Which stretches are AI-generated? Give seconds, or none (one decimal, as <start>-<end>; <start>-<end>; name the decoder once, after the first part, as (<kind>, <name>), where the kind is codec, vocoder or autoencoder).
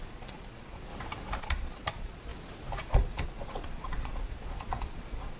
0.0-0.9 (vocoder, Vocos); 1.4-2.3; 2.8-5.4